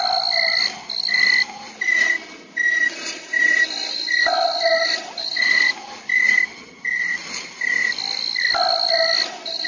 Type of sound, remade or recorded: recorded